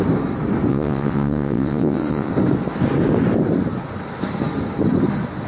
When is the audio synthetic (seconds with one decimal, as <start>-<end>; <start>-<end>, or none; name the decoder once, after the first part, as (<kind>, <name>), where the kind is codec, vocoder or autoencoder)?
0.7-2.3 (vocoder, WaveNeXt)

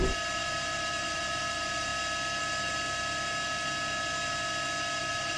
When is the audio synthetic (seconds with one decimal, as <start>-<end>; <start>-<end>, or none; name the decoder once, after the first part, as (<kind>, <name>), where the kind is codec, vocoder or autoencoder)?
0.0-1.9 (vocoder, BigVGAN v2); 5.0-5.4

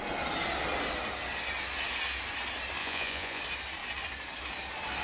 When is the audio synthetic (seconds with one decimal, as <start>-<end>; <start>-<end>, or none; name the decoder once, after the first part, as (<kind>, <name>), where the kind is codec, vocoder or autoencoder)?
2.8-3.4 (vocoder, Vocos)